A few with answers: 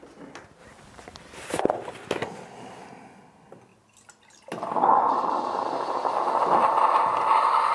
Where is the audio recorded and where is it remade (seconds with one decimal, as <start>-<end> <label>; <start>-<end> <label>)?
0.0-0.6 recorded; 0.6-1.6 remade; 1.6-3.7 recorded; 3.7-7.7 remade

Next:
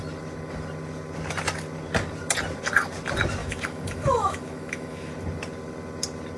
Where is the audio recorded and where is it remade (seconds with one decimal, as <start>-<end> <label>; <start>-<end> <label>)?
0.0-3.4 recorded; 3.4-5.1 remade; 5.1-6.4 recorded

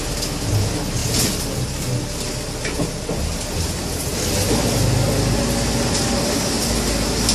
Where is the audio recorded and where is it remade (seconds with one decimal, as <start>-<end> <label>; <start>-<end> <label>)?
0.0-7.3 recorded

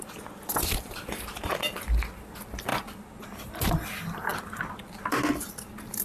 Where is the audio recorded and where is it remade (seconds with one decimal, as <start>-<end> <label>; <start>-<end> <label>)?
0.0-6.0 recorded